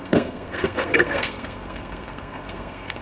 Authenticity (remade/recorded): remade